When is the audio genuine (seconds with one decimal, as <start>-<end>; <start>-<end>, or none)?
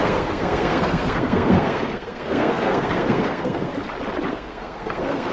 3.7-4.3